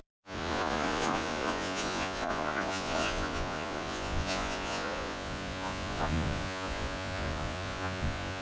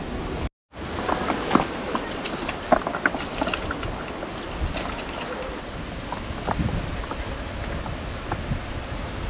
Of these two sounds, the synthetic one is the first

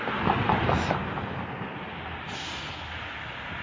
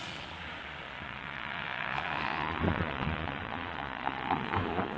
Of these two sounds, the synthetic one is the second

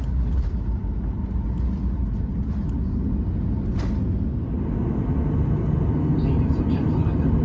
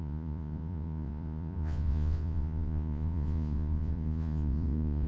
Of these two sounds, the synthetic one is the second